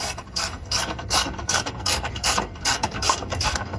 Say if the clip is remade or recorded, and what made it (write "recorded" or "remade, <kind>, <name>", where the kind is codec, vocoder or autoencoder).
remade, codec, SNAC